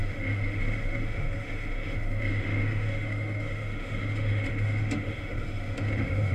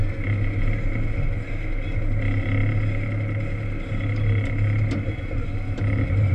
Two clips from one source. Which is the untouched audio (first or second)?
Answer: second